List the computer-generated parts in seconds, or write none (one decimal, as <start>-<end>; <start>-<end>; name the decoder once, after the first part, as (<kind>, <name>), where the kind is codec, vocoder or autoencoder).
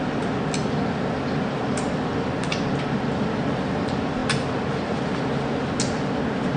none